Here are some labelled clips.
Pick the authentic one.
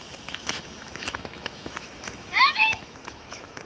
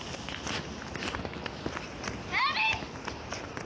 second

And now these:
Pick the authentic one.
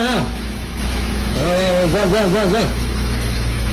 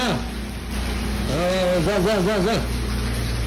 second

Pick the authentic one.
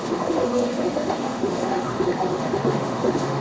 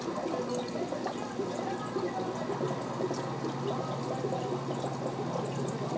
second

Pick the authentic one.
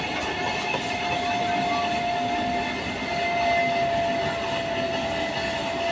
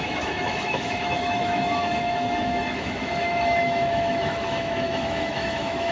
first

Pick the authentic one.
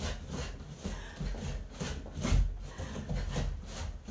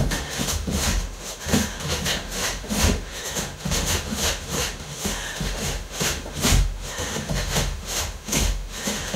first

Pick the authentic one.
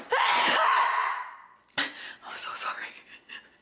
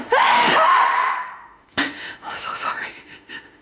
first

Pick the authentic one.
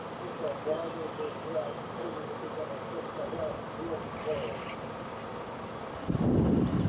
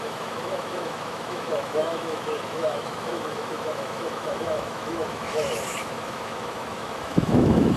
first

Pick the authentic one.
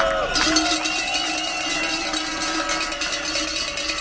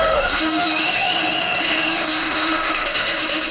first